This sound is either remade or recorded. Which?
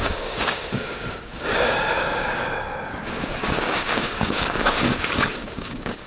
remade